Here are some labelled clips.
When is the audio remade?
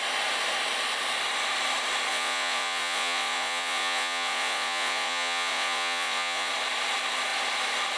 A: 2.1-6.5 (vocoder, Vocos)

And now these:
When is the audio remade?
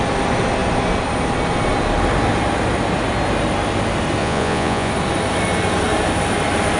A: 4.2-4.9 (vocoder, Vocos)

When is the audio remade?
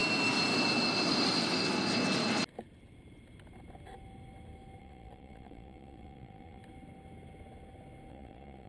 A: 4.8-6.6 (vocoder, Vocos); 8.1-8.7